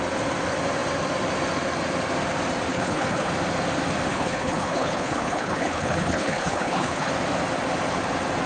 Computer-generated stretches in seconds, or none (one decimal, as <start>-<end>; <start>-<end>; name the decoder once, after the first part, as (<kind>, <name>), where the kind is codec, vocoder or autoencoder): 2.7-3.3 (codec, HILCodec); 4.1-7.1